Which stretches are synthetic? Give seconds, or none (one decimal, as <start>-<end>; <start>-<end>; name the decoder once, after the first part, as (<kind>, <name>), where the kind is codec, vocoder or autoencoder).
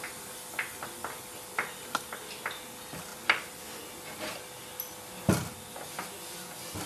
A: none